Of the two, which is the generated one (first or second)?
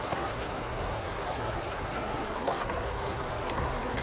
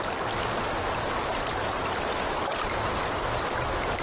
first